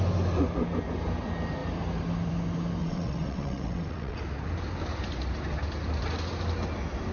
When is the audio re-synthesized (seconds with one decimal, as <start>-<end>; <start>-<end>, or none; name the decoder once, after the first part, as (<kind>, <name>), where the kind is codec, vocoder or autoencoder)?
2.8-4.2 (vocoder, WaveNeXt)